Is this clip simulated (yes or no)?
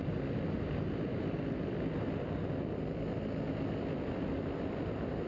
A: no